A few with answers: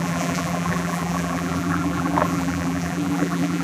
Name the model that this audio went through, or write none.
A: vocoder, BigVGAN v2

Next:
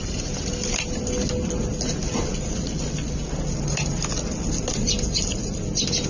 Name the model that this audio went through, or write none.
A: none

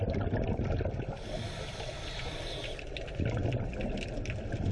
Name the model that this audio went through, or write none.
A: none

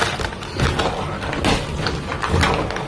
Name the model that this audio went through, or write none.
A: none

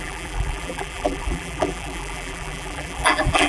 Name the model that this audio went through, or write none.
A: vocoder, BigVGAN v2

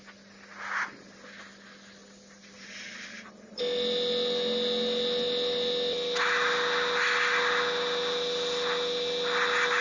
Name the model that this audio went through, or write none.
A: none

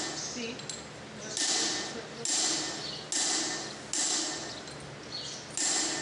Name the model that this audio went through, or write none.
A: none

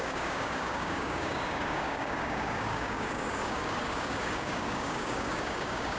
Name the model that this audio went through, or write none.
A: codec, DAC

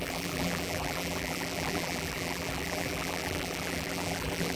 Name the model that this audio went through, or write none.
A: vocoder, BigVGAN v2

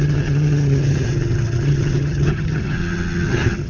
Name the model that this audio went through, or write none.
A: vocoder, HiFi-GAN